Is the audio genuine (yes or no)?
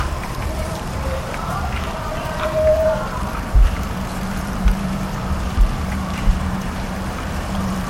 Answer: no